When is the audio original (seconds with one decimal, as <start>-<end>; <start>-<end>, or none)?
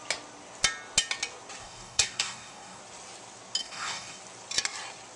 0.0-1.6; 2.8-3.6; 4.2-5.2